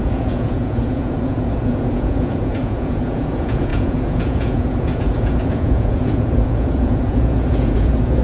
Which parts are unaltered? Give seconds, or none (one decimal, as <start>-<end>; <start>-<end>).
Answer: none